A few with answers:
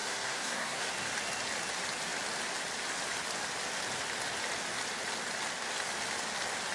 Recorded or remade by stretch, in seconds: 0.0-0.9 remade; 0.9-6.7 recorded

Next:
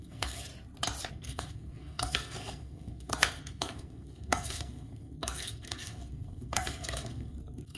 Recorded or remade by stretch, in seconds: 0.0-0.5 remade; 0.5-1.1 recorded; 1.1-7.8 remade

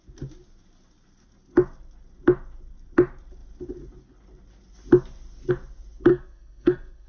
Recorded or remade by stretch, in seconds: 0.0-6.1 recorded; 6.1-7.1 remade

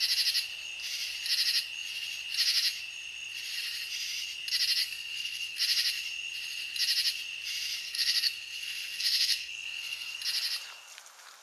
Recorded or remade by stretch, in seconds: 0.0-4.8 recorded; 4.8-5.6 remade; 5.6-7.8 recorded; 7.8-10.2 remade; 10.2-11.4 recorded

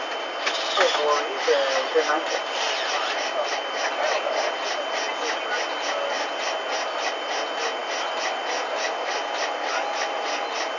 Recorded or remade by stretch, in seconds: 0.0-10.8 recorded

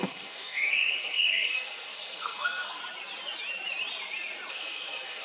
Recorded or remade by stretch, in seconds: 0.0-2.8 remade; 2.8-4.5 recorded; 4.5-5.2 remade

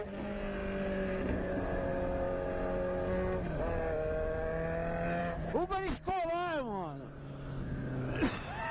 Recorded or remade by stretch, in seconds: 0.0-8.7 recorded

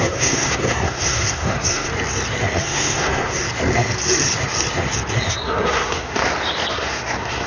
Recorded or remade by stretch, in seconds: 0.0-1.9 remade; 1.9-2.6 recorded; 2.6-3.4 remade; 3.4-5.3 recorded; 5.3-6.2 remade; 6.2-6.7 recorded; 6.7-7.5 remade